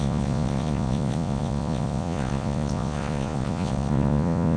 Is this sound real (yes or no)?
no